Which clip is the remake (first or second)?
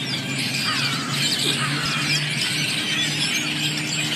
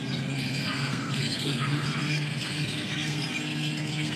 second